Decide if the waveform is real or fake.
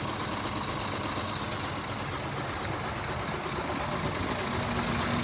real